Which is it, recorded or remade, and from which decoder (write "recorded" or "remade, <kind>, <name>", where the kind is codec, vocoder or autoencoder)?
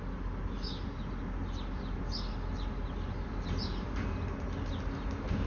recorded